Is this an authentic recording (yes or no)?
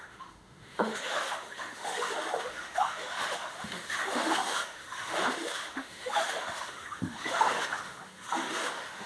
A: no